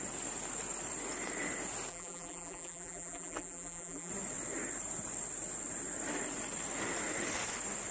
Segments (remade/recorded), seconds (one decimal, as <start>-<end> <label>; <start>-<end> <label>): 0.0-1.9 recorded; 1.9-4.1 remade; 4.1-7.9 recorded